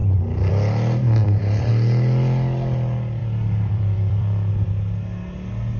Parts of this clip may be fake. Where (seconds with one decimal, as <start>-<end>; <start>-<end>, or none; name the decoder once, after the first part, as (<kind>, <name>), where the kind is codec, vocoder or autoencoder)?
0.0-0.5 (vocoder, BigVGAN v2); 1.2-1.7; 3.2-4.5